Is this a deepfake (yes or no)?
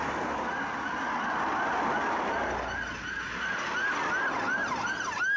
no